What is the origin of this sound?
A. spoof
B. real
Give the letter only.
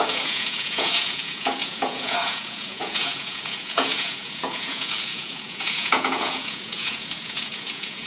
A